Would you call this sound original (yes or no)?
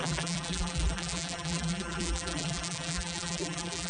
no